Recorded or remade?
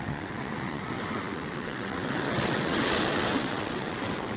remade